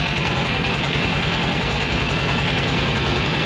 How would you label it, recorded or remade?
remade